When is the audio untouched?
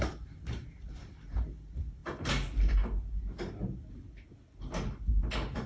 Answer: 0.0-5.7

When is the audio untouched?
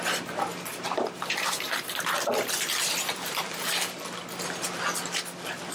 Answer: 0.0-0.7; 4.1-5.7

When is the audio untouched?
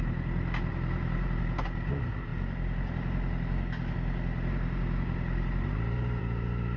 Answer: 0.0-6.8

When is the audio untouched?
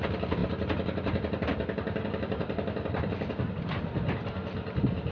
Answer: 0.0-5.1